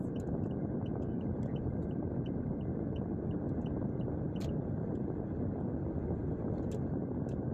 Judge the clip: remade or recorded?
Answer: recorded